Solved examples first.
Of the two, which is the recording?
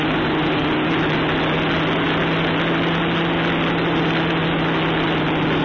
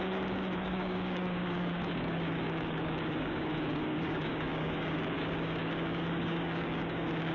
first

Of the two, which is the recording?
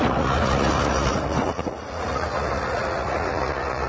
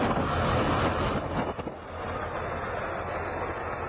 second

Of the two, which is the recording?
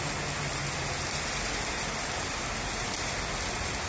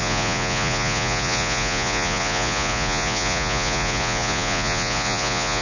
first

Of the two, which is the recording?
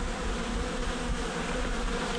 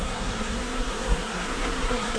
first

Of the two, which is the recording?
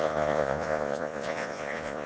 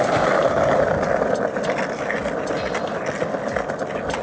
second